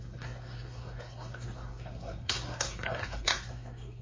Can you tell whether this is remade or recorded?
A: remade